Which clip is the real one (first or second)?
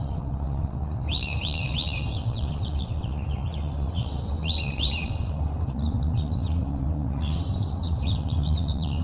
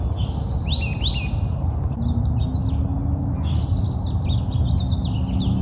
second